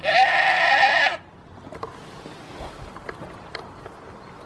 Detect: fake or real real